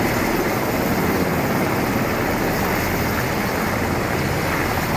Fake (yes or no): no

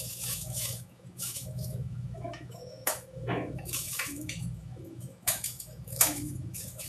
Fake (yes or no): yes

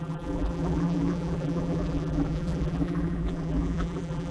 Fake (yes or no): yes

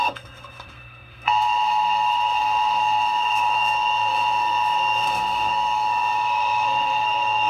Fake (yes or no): yes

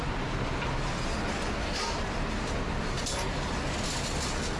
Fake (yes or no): no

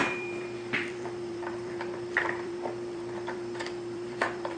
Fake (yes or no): yes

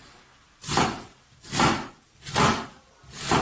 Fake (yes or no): no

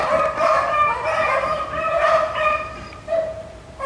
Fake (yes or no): yes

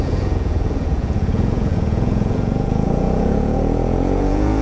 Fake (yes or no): yes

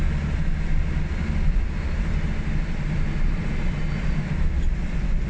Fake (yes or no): no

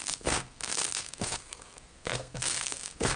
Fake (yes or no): yes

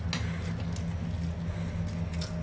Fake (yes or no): no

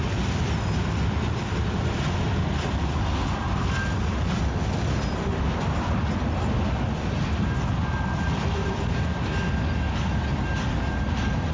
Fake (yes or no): no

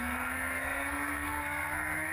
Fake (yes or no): yes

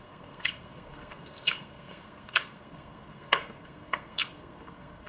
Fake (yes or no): yes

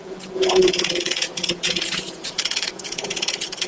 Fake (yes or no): yes